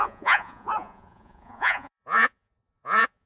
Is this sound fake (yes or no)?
yes